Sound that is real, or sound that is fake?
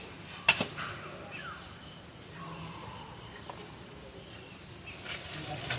real